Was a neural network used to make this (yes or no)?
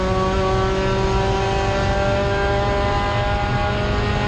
no